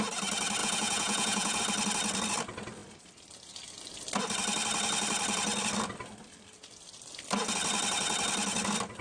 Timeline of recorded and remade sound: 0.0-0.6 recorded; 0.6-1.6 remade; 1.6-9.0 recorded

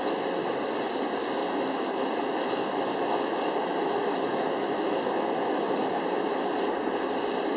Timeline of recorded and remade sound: 0.0-1.4 recorded; 1.4-6.0 remade; 6.0-7.6 recorded

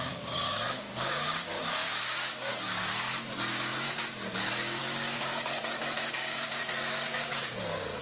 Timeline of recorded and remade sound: 0.0-8.0 remade